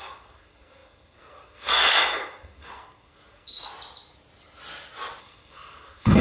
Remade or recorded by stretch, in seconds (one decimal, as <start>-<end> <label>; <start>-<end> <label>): 0.0-3.7 remade; 3.7-5.2 recorded; 5.2-6.2 remade